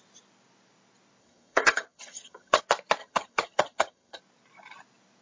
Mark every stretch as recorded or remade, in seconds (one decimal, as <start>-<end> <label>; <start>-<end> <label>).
0.0-1.2 recorded; 1.2-2.6 remade; 2.6-3.0 recorded; 3.0-4.2 remade; 4.2-5.2 recorded